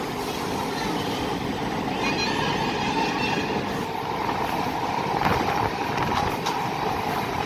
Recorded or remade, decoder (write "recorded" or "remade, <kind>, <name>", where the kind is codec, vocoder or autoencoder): recorded